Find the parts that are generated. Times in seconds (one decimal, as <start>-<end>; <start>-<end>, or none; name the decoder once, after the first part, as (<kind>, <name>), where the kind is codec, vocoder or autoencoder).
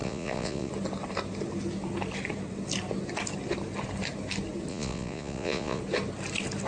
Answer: 0.0-0.7 (vocoder, Vocos); 4.7-5.8